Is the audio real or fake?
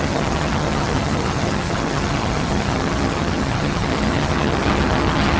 fake